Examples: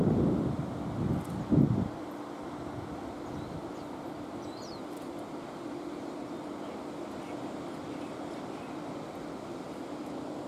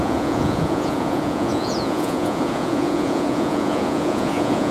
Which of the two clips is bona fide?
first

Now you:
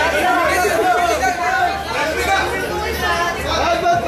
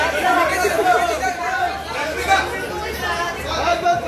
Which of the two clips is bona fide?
first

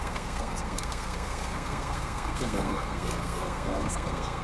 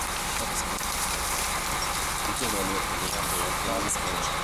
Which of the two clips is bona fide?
second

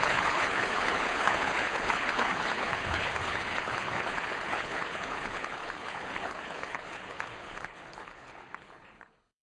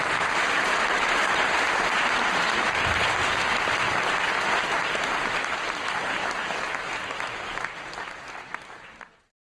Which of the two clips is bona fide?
second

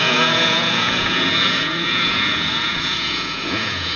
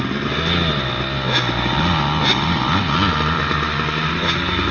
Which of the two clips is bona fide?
second